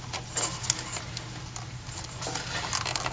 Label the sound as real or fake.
real